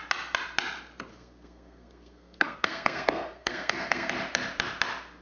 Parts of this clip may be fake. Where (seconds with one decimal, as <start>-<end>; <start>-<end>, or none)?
1.1-4.1